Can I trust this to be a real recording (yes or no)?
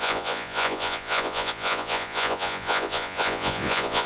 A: no